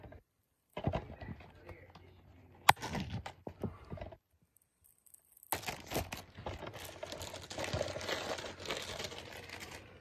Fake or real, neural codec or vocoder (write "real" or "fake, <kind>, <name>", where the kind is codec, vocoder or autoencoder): real